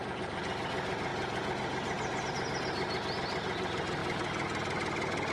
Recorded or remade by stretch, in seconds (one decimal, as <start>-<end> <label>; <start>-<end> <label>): 0.0-5.3 recorded